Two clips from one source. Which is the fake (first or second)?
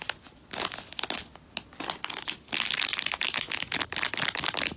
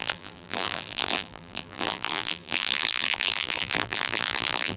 second